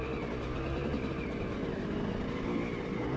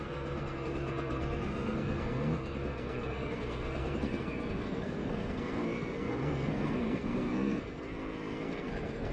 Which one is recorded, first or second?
first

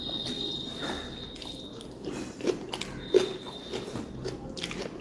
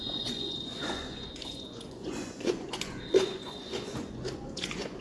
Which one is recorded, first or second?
first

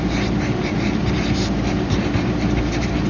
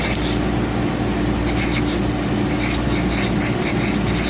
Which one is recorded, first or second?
second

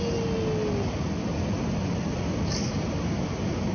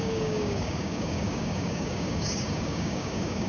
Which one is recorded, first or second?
first